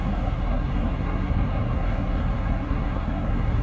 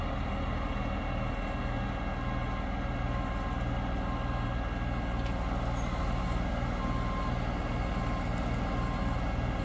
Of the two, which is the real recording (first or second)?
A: second